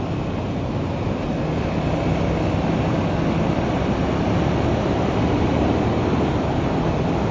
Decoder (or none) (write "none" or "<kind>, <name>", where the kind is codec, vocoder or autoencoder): none